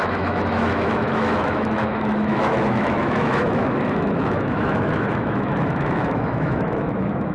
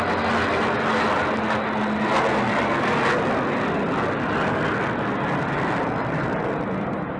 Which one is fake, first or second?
first